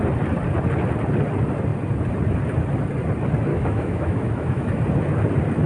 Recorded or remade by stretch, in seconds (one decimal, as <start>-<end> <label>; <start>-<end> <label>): 0.0-3.5 recorded; 3.5-4.8 remade; 4.8-5.7 recorded